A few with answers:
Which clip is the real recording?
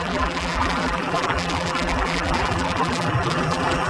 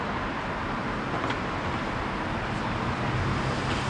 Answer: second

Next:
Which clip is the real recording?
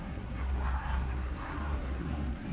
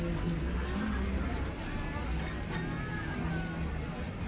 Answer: second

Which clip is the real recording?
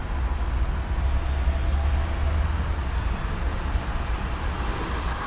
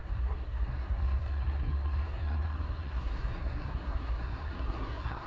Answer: first